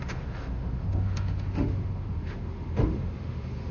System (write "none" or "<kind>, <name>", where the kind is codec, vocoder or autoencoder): autoencoder, DAC-VAE